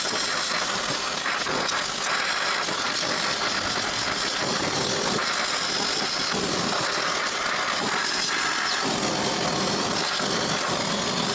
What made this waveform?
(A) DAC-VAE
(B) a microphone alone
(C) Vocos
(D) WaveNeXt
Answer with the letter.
B